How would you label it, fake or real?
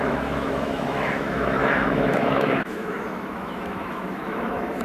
fake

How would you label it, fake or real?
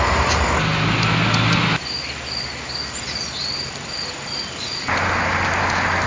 real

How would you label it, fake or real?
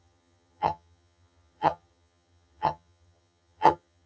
fake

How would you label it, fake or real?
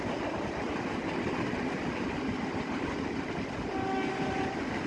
real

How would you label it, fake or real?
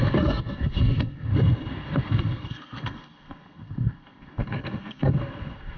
fake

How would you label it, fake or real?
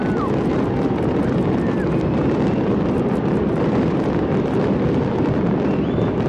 real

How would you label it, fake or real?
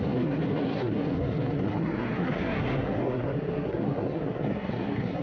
fake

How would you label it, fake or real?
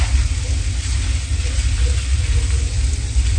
real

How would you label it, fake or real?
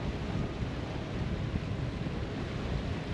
real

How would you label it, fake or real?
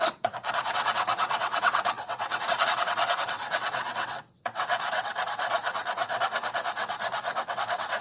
fake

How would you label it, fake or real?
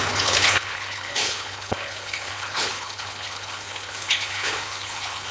fake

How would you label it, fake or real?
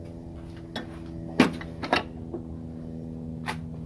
real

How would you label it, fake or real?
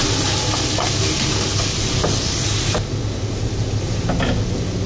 real